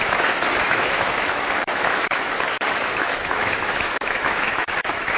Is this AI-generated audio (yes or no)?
yes